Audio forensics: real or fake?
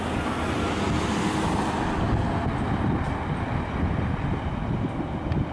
real